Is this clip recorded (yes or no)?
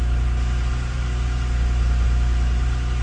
yes